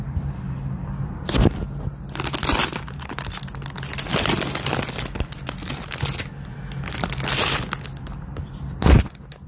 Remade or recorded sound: recorded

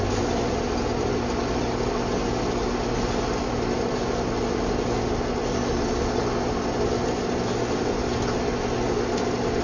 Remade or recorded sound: recorded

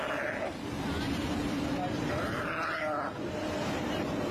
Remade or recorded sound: remade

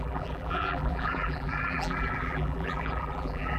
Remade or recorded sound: remade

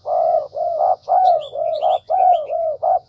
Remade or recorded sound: remade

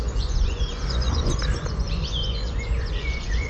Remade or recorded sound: remade